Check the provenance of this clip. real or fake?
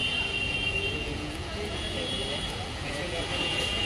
fake